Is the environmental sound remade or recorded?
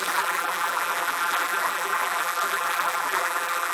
remade